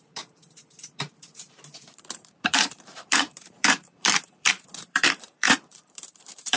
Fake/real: fake